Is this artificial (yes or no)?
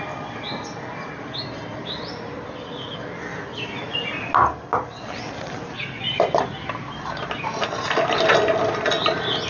no